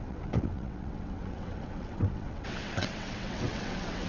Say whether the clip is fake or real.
fake